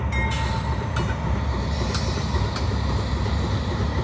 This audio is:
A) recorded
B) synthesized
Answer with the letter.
A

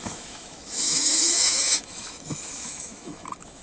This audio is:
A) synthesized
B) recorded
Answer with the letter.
A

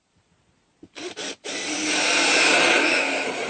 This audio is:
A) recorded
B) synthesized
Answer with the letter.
A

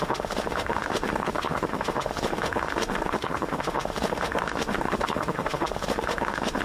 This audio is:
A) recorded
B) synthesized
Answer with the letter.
B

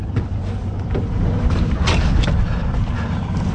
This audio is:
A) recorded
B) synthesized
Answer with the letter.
A